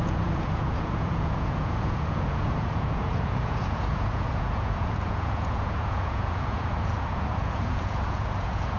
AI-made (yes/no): yes